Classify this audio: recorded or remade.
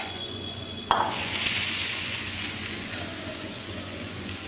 remade